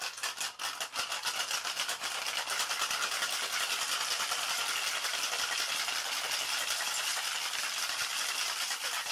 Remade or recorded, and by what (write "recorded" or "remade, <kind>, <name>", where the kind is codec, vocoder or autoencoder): recorded